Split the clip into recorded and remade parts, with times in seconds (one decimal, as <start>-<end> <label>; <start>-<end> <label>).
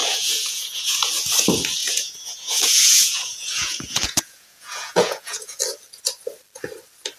0.0-1.1 remade; 1.1-1.8 recorded; 1.8-5.6 remade; 5.6-7.2 recorded